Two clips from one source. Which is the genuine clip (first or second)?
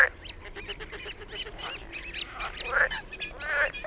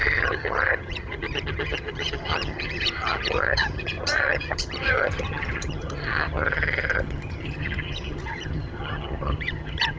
first